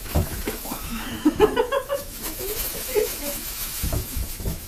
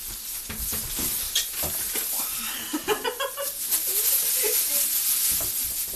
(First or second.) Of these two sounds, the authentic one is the second